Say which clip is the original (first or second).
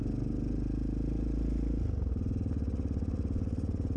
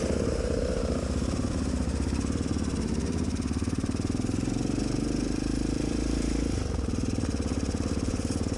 first